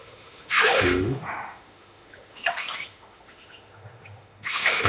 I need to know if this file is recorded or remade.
remade